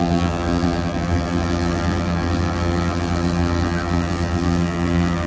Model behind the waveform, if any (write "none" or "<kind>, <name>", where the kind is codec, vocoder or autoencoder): vocoder, BigVGAN v2